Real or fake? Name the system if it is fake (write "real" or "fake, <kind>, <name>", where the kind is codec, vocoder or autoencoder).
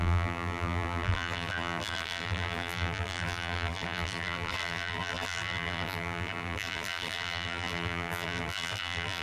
fake, vocoder, BigVGAN v2